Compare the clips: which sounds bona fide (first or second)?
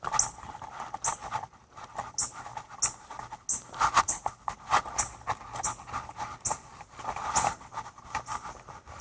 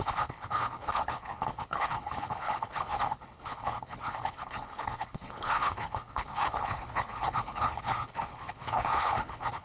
first